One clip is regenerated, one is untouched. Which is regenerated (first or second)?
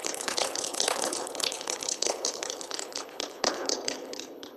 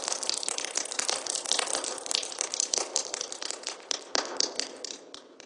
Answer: first